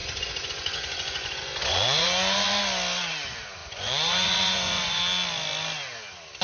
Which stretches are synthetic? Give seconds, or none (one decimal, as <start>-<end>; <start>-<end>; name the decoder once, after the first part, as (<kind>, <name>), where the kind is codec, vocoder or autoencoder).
0.0-2.6 (vocoder, Vocos); 3.6-5.0